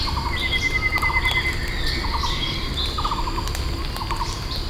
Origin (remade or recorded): recorded